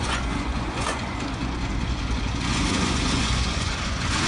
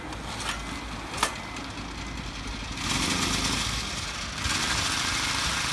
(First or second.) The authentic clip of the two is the second